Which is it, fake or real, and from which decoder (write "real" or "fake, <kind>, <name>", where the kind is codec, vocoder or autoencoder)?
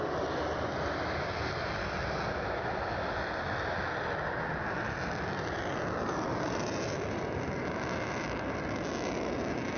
real